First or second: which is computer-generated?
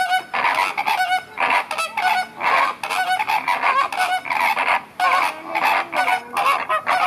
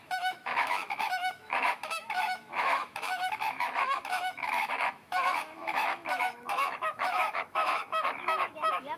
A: second